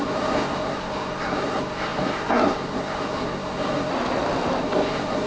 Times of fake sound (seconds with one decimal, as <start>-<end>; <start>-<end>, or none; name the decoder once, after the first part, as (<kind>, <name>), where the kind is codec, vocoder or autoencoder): 0.0-3.9 (codec, SNAC); 4.6-5.3